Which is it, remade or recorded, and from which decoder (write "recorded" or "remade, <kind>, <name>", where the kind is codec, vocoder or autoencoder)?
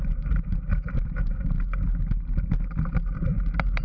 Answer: recorded